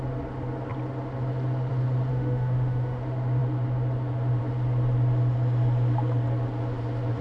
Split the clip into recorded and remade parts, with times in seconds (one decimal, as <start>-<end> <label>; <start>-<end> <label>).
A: 0.0-2.1 recorded; 2.1-3.0 remade; 3.0-7.2 recorded